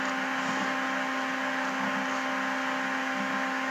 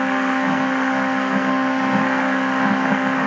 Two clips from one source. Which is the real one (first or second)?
first